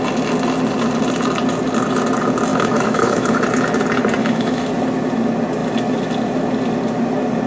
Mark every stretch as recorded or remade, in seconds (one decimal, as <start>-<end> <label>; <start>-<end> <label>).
0.0-2.5 recorded; 2.5-3.4 remade; 3.4-4.2 recorded; 4.2-4.7 remade; 4.7-7.5 recorded